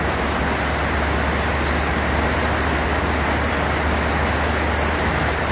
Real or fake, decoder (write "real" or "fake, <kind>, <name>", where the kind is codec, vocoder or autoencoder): real